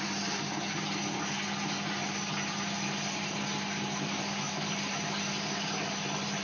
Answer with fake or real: real